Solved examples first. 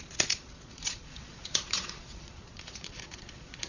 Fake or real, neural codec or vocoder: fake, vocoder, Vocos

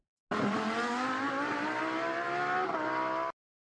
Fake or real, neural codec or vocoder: real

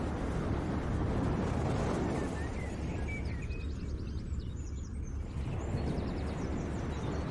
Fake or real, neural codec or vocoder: real